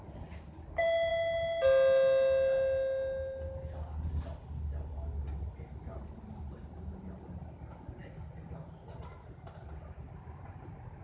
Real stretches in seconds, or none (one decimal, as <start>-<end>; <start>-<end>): 0.0-11.0